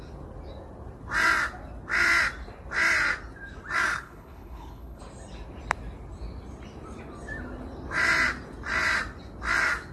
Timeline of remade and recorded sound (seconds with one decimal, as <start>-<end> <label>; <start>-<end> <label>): 0.0-3.9 recorded; 3.9-5.0 remade; 5.0-9.9 recorded

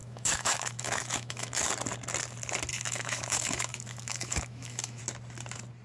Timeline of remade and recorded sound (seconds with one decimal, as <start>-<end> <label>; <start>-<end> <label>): 0.0-1.7 remade; 1.7-2.7 recorded; 2.7-5.0 remade; 5.0-5.8 recorded

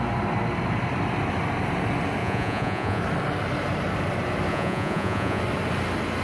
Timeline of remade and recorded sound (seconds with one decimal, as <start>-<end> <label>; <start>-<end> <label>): 0.0-2.2 recorded; 2.2-3.0 remade; 3.0-4.5 recorded; 4.5-5.4 remade; 5.4-6.2 recorded